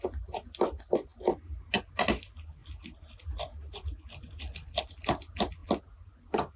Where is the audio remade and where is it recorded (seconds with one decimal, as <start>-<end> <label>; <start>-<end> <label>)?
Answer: 0.0-6.6 recorded